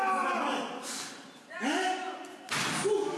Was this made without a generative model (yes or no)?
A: yes